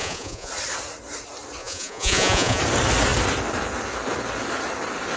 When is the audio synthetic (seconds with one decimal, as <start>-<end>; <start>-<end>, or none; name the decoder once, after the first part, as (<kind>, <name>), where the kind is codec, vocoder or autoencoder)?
0.0-0.5 (vocoder, Vocos); 1.6-2.6